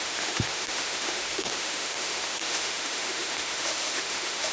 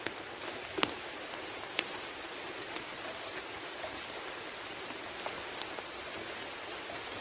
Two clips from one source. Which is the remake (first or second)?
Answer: first